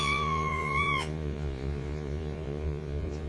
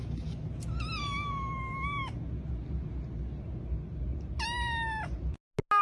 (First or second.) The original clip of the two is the second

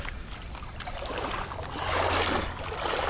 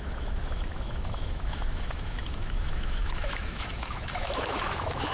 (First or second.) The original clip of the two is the first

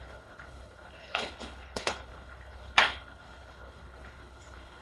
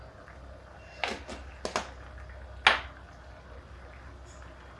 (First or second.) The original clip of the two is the second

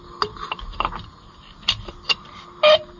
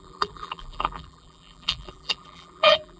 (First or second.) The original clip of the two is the first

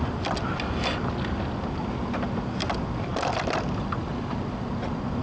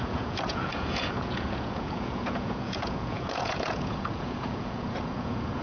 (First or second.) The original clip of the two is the first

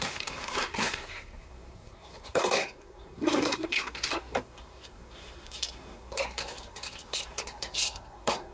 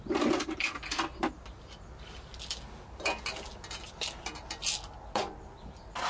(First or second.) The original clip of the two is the second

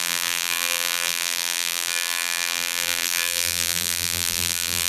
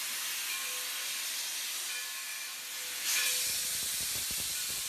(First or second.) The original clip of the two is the second